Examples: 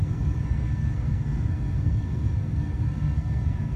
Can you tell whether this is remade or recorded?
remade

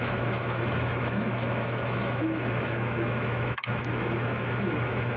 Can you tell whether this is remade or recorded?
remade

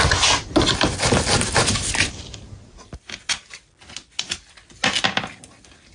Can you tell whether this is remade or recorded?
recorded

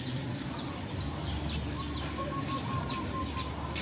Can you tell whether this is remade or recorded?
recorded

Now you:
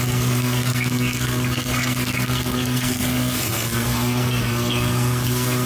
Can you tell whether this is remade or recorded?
remade